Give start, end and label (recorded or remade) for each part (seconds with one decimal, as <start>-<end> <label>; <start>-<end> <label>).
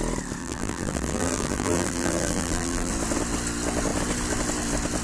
0.0-0.4 recorded; 0.4-2.9 remade; 2.9-5.0 recorded